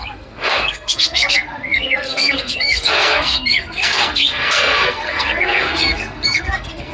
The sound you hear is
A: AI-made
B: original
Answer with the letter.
A